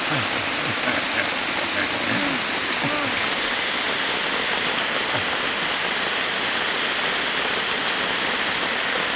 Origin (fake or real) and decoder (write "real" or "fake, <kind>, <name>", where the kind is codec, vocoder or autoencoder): real